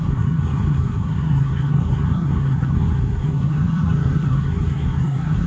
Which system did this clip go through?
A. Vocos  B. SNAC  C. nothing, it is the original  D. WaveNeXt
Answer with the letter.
B